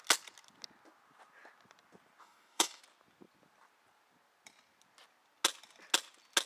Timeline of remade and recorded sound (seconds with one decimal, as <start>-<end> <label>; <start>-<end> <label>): 0.0-2.2 recorded; 2.2-2.8 remade; 2.8-6.5 recorded

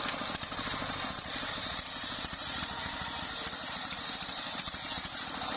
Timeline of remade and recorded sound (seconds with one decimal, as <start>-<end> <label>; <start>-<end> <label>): 0.0-1.2 recorded; 1.2-4.6 remade; 4.6-5.6 recorded

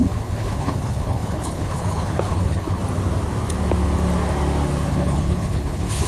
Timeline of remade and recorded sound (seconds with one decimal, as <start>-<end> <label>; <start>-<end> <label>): 0.0-2.8 remade; 2.8-4.9 recorded; 4.9-6.1 remade

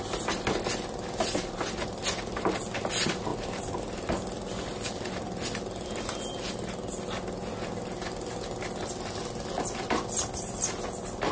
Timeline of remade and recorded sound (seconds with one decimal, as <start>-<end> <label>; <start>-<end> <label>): 0.0-11.3 recorded

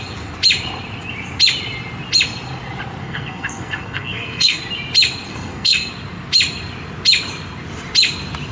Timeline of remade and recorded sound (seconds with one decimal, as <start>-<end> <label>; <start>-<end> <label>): 0.0-3.0 recorded; 3.0-4.6 remade; 4.6-5.3 recorded; 5.3-5.9 remade; 5.9-8.5 recorded

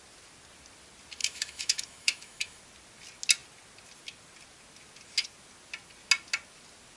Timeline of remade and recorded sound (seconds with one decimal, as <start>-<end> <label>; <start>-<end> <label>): 0.0-1.2 recorded; 1.2-2.6 remade; 2.6-7.0 recorded